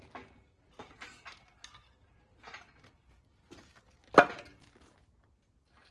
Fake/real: real